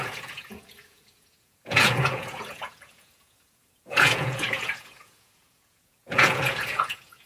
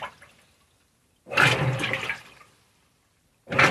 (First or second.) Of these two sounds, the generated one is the first